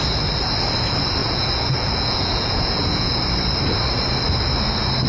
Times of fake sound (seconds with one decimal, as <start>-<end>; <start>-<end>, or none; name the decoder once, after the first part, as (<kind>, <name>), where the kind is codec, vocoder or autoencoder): 1.2-3.2 (vocoder, Vocos)